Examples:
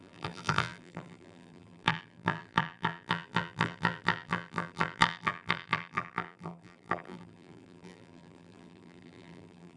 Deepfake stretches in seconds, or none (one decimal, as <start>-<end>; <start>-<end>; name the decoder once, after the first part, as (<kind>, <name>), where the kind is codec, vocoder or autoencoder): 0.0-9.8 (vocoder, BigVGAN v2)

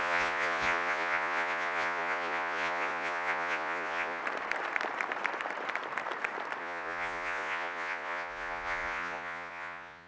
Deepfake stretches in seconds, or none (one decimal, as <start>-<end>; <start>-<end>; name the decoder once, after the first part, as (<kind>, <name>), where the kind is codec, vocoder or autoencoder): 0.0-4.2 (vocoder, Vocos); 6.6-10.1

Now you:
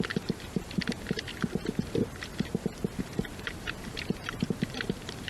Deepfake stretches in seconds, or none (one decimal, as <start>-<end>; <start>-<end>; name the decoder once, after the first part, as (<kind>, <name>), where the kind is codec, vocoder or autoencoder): 0.0-1.3 (vocoder, BigVGAN v2); 3.0-5.3

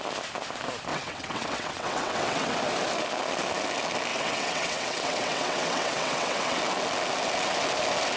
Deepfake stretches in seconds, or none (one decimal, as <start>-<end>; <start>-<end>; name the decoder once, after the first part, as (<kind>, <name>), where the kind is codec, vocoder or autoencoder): 0.9-2.6 (vocoder, WaveNeXt); 4.1-6.6